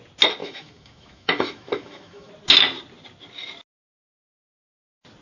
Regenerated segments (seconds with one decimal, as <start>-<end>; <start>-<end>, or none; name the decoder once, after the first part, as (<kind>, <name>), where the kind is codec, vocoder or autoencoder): 0.4-2.3 (autoencoder, DAC-VAE)